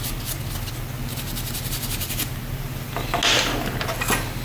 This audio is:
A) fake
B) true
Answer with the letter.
B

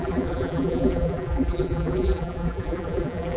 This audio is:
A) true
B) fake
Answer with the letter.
B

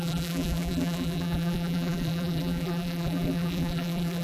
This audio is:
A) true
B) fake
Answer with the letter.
B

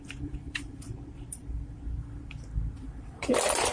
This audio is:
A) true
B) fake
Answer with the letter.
B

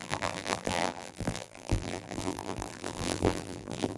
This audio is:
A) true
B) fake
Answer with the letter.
B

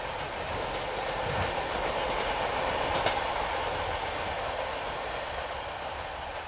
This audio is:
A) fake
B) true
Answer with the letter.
B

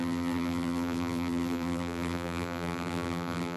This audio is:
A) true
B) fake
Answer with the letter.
B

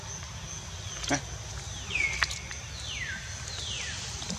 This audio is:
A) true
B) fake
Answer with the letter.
A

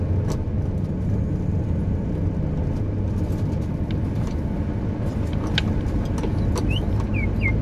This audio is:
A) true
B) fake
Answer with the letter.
A